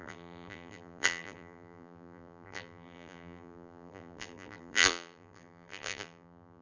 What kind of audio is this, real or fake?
fake